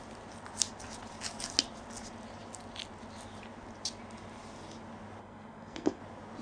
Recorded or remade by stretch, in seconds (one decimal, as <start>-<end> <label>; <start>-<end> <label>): 0.0-5.2 recorded; 5.2-6.0 remade; 6.0-6.4 recorded